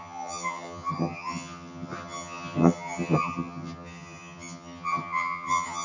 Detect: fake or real fake